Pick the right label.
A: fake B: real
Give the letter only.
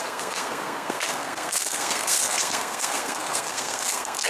A